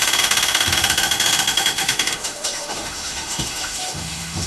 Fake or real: fake